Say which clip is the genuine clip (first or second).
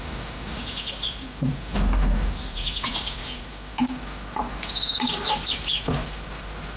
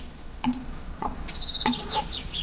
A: first